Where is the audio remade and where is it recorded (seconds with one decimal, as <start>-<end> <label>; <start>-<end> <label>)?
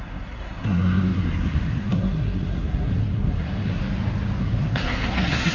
0.0-3.8 remade; 3.8-4.4 recorded; 4.4-5.5 remade